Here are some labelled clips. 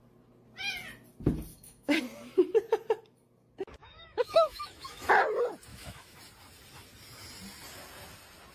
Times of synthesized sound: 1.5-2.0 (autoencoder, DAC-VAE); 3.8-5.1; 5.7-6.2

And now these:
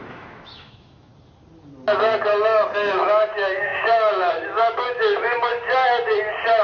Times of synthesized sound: 0.0-1.1 (autoencoder, DAC-VAE); 2.9-5.5

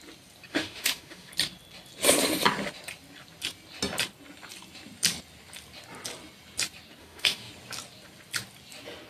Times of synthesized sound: 0.5-1.3 (autoencoder, DAC-VAE); 7.0-7.5

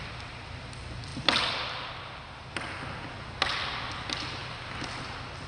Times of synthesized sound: none

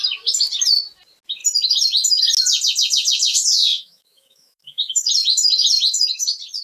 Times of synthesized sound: 3.7-5.1 (autoencoder, DAC-VAE)

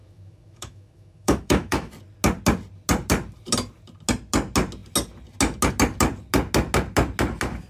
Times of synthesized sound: 0.0-1.9 (autoencoder, DAC-VAE)

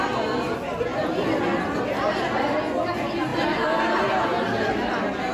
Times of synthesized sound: none

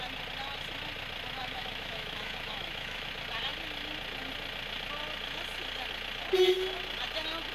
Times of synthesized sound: 1.4-3.1 (autoencoder, DAC-VAE)